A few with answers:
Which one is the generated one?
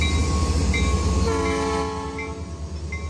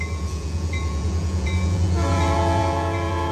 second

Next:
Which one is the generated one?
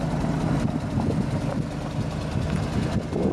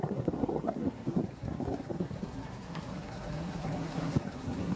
second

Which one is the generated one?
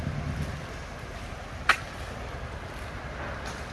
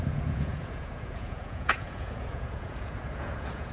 second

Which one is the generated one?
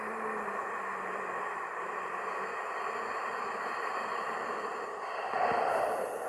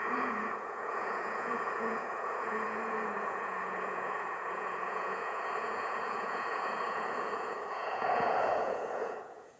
second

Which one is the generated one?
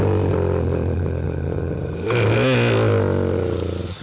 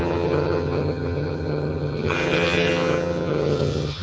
second